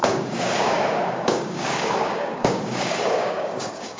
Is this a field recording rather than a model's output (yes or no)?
no